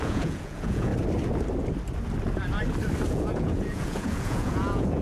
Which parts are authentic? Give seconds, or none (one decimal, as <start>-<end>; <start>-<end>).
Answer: 0.9-3.1